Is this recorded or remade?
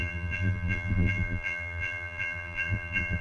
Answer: remade